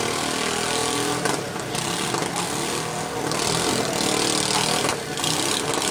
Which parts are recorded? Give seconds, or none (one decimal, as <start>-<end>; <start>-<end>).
0.0-5.9